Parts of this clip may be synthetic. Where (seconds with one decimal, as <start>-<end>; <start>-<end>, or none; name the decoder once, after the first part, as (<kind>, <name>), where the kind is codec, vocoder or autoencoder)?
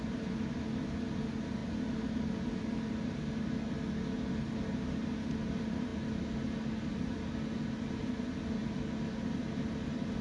none